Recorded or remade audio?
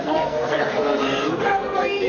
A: remade